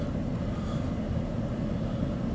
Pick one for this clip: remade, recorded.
recorded